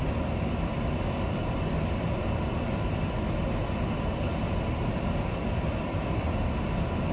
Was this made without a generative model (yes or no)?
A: yes